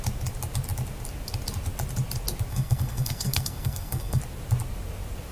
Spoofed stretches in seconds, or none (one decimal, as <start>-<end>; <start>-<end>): 2.5-4.2